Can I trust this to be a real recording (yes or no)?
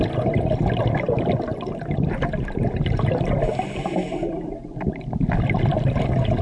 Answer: yes